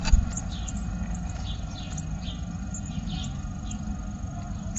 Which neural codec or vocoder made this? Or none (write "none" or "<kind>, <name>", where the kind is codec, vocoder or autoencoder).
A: none